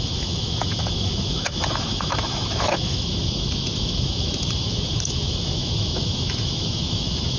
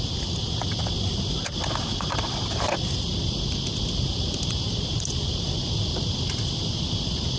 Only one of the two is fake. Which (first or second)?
first